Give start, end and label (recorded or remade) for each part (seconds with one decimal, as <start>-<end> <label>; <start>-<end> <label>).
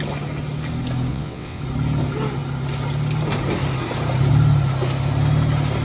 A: 0.0-1.1 recorded; 1.1-1.6 remade; 1.6-5.8 recorded